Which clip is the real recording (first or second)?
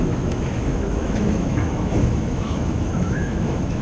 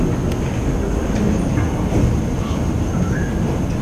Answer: second